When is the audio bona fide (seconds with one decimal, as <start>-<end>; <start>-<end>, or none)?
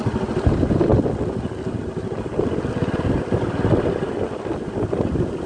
0.0-5.5